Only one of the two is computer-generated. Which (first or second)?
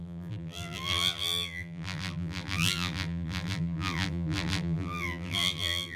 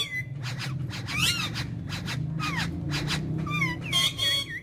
first